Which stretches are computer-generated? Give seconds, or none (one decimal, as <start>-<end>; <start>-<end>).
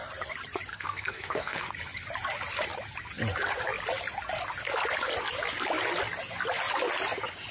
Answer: 0.7-1.7